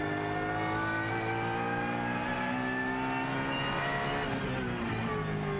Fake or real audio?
real